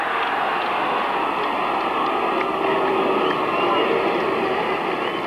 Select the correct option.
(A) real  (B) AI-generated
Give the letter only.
A